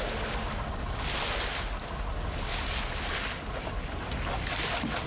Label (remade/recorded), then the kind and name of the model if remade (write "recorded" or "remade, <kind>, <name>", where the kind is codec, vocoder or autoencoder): recorded